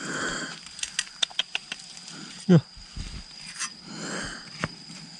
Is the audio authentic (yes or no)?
yes